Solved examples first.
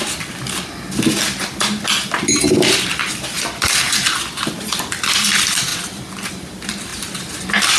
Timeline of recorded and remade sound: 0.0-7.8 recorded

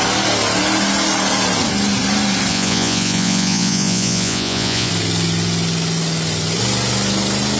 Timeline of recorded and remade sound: 0.0-2.5 recorded; 2.5-4.9 remade; 4.9-7.6 recorded